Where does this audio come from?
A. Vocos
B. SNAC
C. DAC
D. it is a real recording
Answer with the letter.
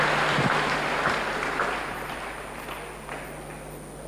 D